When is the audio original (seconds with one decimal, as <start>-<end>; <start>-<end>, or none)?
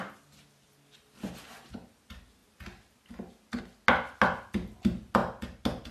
0.0-5.9